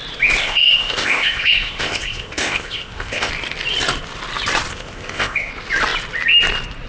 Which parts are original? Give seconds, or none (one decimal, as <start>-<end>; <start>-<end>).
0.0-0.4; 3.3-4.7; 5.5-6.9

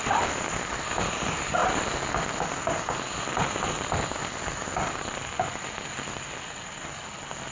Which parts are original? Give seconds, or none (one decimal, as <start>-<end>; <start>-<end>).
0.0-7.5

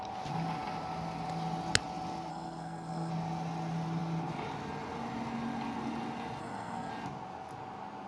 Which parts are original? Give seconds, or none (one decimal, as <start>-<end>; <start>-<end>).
0.0-2.3; 3.1-6.4; 6.9-8.1

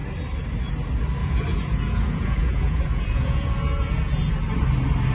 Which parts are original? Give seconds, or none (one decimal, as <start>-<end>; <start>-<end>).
0.0-1.2; 4.3-5.1